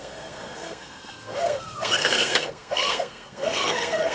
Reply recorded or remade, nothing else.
remade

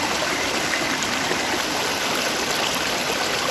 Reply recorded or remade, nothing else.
recorded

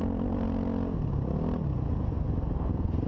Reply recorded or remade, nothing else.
recorded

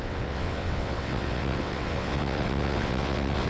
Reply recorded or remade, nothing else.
remade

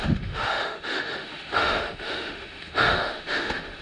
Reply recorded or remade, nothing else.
remade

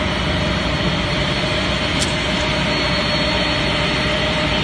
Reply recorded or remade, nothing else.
recorded